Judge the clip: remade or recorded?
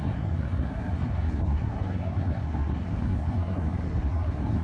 remade